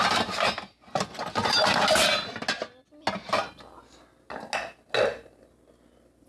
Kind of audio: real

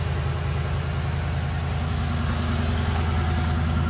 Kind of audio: real